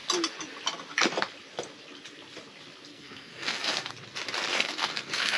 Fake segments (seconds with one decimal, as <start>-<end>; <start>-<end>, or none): 2.9-3.9; 4.5-5.4